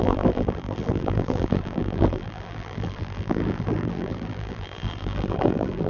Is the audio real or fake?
fake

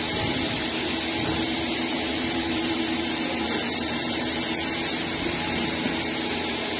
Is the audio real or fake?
fake